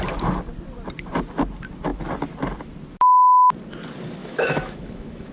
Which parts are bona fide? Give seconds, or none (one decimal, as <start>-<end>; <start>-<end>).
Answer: 0.0-4.2